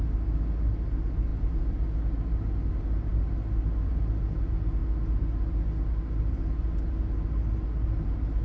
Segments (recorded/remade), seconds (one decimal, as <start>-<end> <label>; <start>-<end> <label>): 0.0-8.4 recorded